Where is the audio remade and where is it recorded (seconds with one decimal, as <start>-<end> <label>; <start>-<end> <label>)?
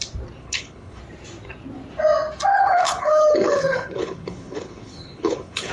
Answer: 0.0-0.4 recorded; 0.4-1.0 remade; 1.0-2.5 recorded; 2.5-5.7 remade